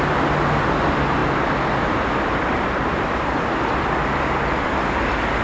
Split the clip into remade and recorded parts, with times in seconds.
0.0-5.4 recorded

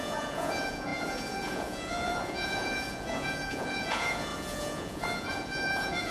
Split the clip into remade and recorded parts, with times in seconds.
0.0-6.1 remade

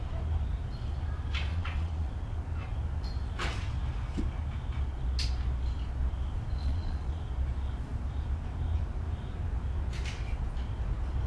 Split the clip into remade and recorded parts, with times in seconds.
0.0-1.5 recorded; 1.5-2.1 remade; 2.1-6.6 recorded; 6.6-7.2 remade; 7.2-11.3 recorded